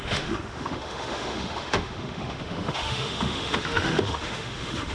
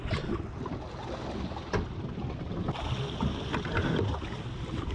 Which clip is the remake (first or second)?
first